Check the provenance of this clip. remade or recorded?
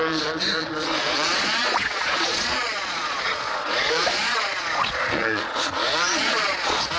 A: remade